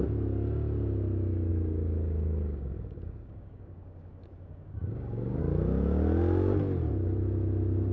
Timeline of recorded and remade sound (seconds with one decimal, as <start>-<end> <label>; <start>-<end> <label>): 0.0-1.5 recorded; 1.5-5.4 remade; 5.4-7.9 recorded